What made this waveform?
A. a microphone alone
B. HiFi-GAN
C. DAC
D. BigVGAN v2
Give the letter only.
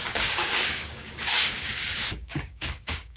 C